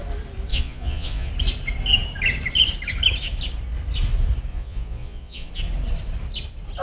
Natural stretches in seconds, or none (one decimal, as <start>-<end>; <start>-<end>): 0.0-0.5; 1.3-4.5; 5.5-6.8